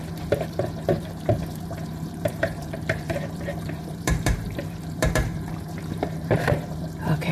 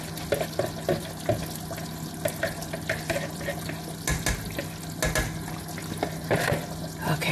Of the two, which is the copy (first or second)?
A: first